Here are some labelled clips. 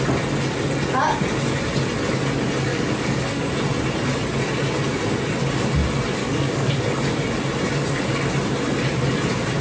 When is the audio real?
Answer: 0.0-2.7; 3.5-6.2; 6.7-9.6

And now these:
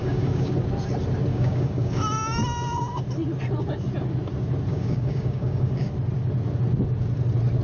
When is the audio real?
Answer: 0.5-1.3; 2.0-4.7; 5.9-7.6

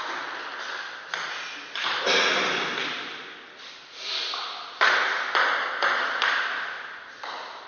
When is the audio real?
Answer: 0.0-7.7

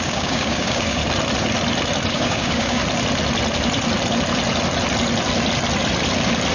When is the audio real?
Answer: 1.0-2.1; 2.8-6.5